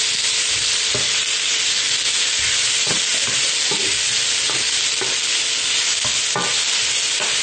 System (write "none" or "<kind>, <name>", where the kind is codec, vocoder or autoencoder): none